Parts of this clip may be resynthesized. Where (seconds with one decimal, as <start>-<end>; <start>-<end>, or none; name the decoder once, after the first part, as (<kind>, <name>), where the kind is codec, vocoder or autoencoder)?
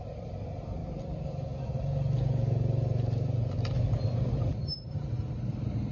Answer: none